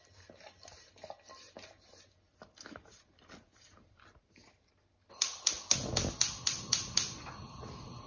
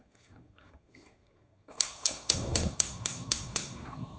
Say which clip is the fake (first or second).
second